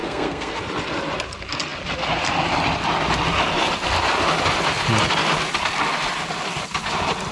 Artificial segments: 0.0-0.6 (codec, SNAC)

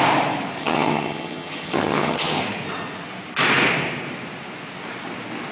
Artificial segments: 0.6-2.4 (vocoder, HiFi-GAN)

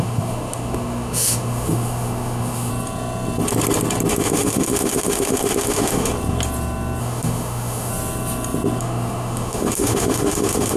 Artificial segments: 0.0-2.7 (autoencoder, DAC-VAE); 4.1-6.1; 7.0-7.9; 8.8-10.8

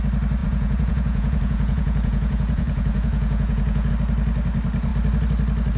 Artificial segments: 0.4-3.9 (vocoder, Vocos)

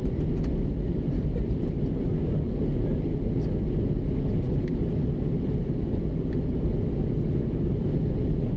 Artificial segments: none

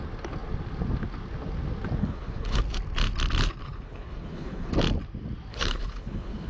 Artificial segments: 2.0-2.6 (codec, HILCodec); 3.6-4.7; 5.5-6.5